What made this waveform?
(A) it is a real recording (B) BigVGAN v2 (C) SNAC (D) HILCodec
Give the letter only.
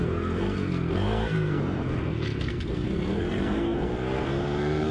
C